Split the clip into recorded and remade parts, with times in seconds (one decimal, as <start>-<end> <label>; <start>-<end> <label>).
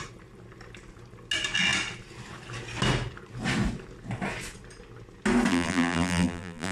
0.0-5.5 recorded; 5.5-6.7 remade